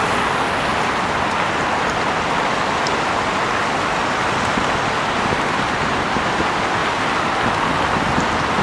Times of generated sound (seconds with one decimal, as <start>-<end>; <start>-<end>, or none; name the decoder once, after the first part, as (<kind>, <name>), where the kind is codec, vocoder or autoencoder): 0.7-2.1 (vocoder, BigVGAN v2); 6.8-7.5